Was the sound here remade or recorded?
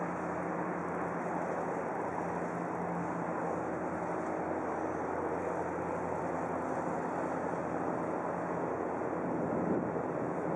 recorded